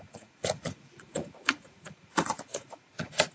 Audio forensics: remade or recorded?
remade